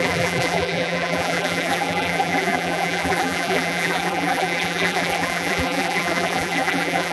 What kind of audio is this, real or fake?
fake